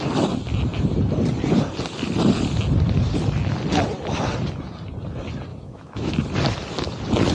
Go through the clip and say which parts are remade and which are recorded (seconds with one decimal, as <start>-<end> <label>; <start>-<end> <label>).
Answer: 0.0-5.5 recorded; 5.5-6.1 remade; 6.1-7.3 recorded